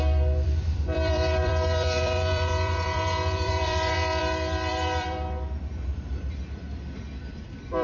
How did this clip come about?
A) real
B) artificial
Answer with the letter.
B